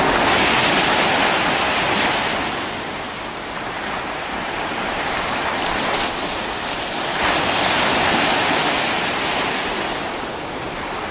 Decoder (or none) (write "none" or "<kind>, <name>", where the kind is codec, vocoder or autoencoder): none